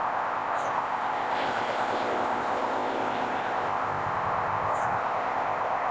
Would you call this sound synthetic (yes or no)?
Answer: yes